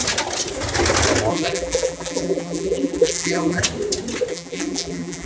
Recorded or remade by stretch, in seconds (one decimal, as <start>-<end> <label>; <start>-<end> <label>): 0.0-1.3 recorded; 1.3-3.6 remade; 3.6-4.3 recorded; 4.3-5.3 remade